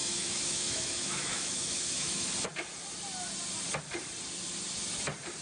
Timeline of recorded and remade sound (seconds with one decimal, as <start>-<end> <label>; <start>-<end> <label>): 0.0-2.3 remade; 2.3-5.4 recorded